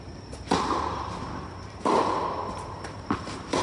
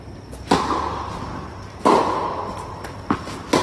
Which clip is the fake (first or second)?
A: first